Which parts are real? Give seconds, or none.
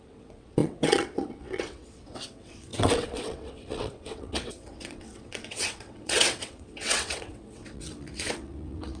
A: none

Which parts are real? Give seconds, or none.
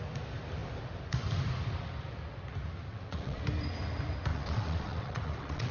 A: 0.0-2.9; 3.4-4.3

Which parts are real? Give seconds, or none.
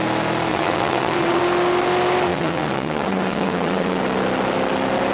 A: 0.0-0.5; 1.4-2.3; 4.0-5.1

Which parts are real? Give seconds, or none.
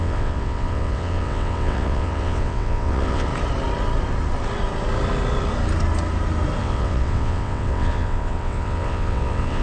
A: 3.3-6.6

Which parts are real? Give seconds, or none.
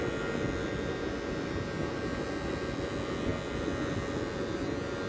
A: 0.0-5.1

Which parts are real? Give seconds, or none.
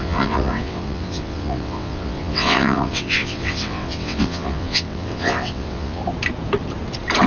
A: 6.0-7.3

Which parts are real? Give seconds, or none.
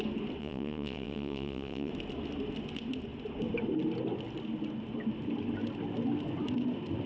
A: 0.0-0.4; 1.9-7.1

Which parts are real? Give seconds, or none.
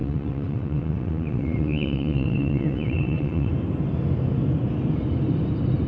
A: 3.5-5.9